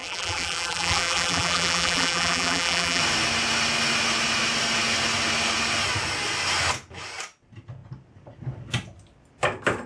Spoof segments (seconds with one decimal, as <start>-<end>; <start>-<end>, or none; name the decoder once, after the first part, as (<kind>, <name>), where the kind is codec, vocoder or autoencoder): 0.0-3.0 (vocoder, BigVGAN v2)